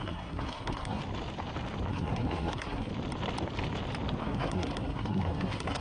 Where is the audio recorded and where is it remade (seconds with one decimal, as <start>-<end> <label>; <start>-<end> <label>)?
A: 0.0-1.0 remade; 1.0-1.9 recorded; 1.9-2.9 remade; 2.9-4.2 recorded; 4.2-5.8 remade